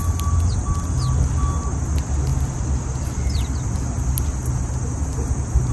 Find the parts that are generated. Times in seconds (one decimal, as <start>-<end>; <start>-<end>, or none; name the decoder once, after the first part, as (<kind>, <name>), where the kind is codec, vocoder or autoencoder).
none